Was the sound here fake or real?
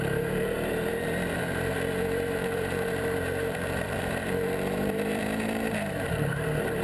fake